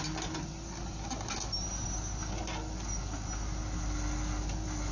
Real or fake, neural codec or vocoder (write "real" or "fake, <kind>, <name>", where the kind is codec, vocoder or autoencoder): real